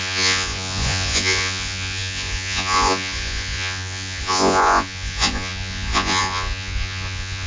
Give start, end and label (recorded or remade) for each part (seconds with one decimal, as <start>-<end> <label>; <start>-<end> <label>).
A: 0.0-7.5 remade